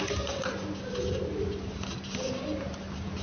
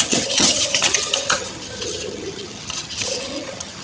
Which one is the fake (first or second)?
second